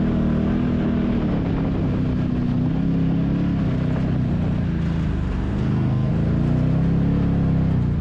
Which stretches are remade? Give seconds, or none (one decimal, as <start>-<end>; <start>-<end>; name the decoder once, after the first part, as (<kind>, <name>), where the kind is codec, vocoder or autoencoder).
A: 5.5-6.1 (codec, SNAC)